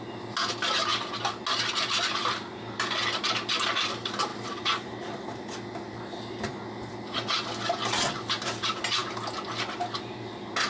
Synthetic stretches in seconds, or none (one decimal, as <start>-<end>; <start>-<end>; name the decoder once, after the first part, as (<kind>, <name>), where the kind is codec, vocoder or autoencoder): none